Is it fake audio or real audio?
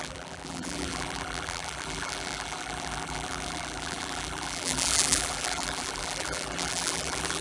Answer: fake